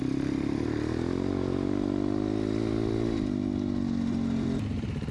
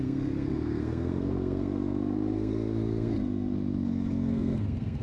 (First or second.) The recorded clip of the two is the first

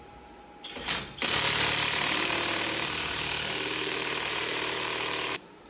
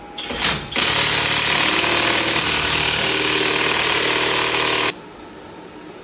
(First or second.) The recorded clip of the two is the second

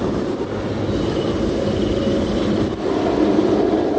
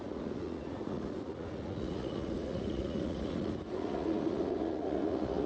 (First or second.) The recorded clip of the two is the first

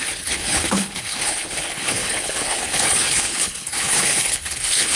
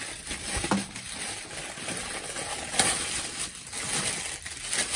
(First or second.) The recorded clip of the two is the second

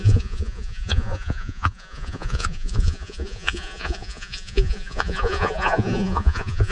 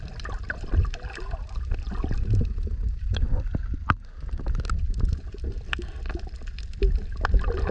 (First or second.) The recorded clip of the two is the second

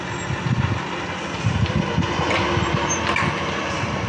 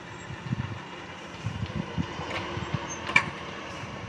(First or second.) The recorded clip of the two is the first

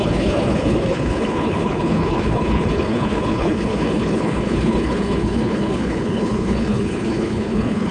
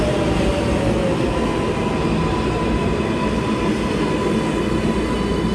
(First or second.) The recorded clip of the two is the second